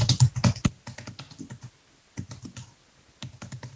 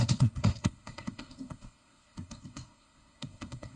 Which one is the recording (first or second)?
first